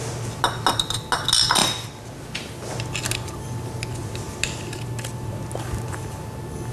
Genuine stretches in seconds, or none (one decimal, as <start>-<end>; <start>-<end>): 0.0-6.7